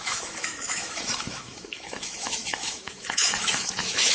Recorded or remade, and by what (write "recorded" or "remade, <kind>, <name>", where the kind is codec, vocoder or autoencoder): remade, autoencoder, DAC-VAE